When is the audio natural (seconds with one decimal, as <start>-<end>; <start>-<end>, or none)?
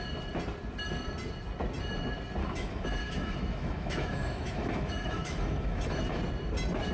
0.0-2.4; 6.2-6.9